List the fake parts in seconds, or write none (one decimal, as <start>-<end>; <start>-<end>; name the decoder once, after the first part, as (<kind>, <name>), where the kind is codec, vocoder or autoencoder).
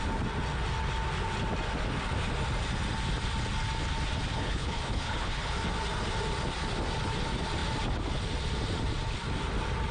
4.4-5.5 (codec, HILCodec)